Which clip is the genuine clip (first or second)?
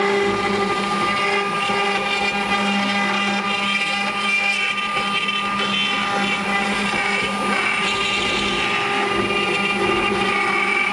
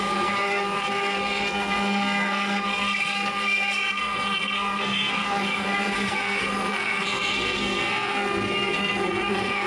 first